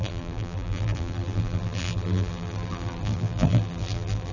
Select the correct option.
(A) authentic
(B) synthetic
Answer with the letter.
B